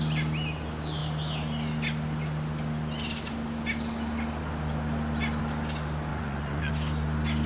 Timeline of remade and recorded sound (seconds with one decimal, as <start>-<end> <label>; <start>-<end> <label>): 0.0-6.1 recorded; 6.1-6.7 remade; 6.7-7.5 recorded